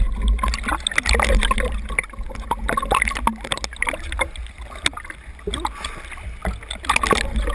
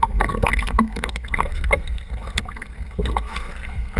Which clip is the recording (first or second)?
first